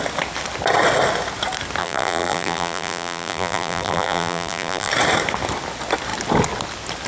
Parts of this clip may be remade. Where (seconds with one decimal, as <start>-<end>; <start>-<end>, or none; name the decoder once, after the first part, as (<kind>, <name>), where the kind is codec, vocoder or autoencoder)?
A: 1.8-4.9 (vocoder, BigVGAN v2)